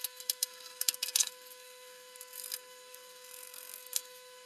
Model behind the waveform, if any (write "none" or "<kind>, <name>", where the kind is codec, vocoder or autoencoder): codec, SNAC